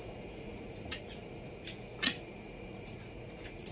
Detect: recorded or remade remade